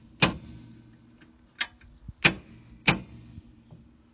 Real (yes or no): yes